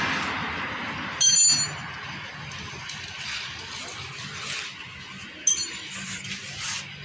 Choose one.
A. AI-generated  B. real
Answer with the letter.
B